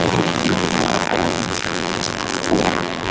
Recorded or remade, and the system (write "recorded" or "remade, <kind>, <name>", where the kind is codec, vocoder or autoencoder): remade, vocoder, BigVGAN v2